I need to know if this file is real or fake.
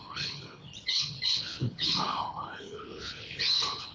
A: fake